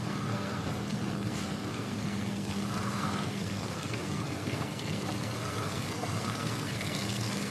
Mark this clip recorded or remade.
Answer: remade